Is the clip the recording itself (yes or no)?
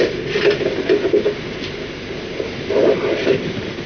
yes